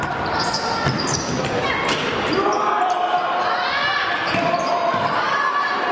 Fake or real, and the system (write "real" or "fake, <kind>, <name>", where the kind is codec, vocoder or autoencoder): real